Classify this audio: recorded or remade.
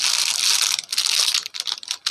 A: recorded